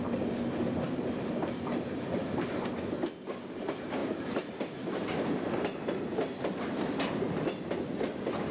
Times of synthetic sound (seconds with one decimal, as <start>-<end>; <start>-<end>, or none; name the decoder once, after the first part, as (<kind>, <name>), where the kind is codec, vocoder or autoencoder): none